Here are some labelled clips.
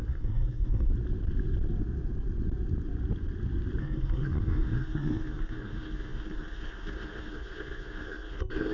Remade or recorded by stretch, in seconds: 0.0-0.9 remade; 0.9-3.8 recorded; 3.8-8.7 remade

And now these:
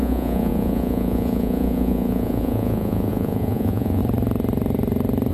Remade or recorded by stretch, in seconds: 0.0-4.0 remade; 4.0-5.3 recorded

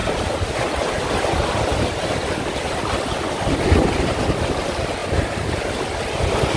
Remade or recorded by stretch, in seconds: 0.0-6.6 recorded

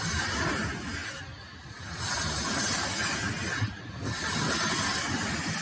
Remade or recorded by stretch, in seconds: 0.0-5.6 recorded

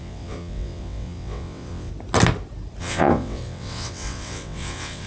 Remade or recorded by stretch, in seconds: 0.0-1.9 remade; 1.9-2.8 recorded; 2.8-5.1 remade

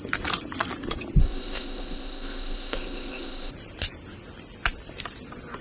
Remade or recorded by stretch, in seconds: 0.0-1.2 recorded; 1.2-3.5 remade; 3.5-5.6 recorded